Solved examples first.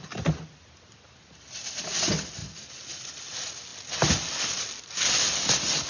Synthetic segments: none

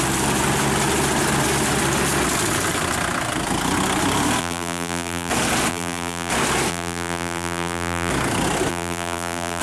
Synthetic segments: 4.4-5.3 (vocoder, BigVGAN v2); 5.7-6.3; 6.7-8.1; 8.7-9.6

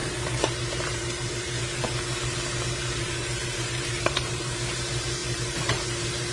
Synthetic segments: 0.0-1.6 (vocoder, BigVGAN v2); 3.0-4.4; 5.2-6.3